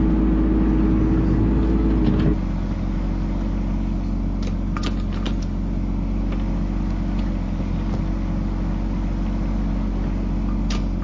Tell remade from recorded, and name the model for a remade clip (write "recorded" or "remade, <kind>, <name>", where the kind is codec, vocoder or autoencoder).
recorded